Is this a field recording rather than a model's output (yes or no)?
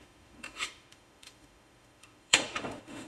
no